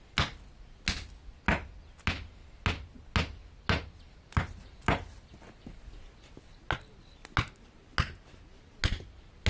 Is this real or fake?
real